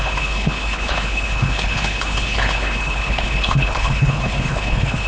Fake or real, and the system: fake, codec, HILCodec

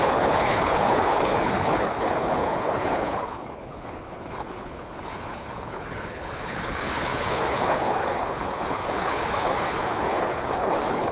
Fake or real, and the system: fake, codec, HILCodec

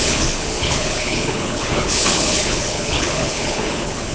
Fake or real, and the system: fake, codec, HILCodec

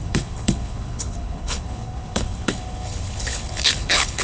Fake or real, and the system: fake, codec, HILCodec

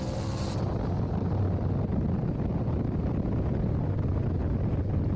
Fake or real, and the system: real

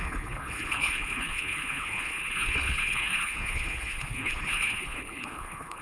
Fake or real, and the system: fake, codec, HILCodec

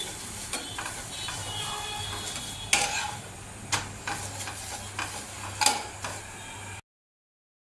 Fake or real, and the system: real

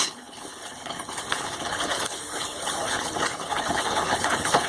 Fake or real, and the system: fake, codec, HILCodec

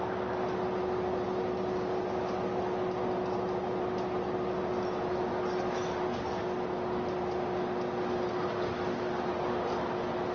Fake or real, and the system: real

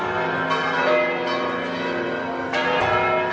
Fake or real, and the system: real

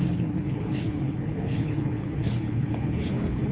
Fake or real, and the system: fake, codec, HILCodec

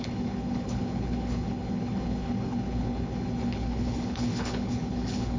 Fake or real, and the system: fake, codec, HILCodec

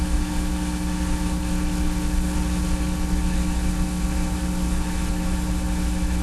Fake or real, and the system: fake, codec, HILCodec